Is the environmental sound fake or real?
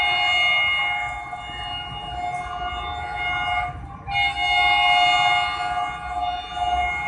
real